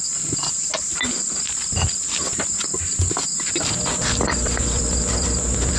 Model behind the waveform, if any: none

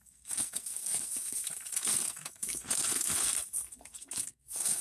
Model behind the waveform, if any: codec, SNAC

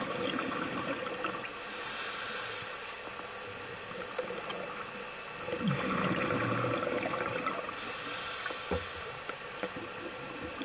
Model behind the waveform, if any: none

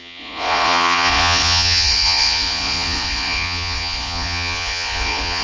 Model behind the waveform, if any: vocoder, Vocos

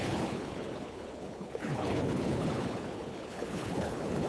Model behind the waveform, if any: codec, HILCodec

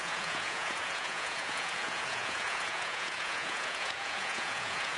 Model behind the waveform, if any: vocoder, Vocos